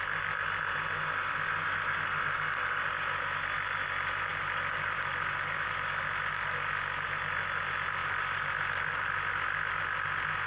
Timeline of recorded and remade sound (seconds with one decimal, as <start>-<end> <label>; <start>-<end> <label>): 0.0-4.3 recorded; 4.3-5.7 remade; 5.7-8.0 recorded; 8.0-10.1 remade; 10.1-10.5 recorded